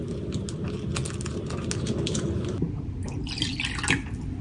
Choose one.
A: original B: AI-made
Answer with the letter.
A